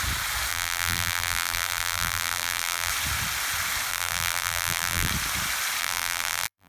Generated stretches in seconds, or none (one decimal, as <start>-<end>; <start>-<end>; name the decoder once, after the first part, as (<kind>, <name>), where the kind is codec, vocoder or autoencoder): 0.5-2.9 (vocoder, BigVGAN v2); 3.9-5.1; 5.8-6.7